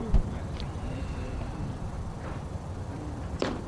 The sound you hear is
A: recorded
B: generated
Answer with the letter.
B